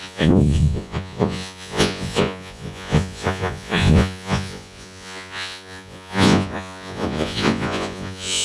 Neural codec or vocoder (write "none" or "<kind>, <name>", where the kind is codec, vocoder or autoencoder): vocoder, Vocos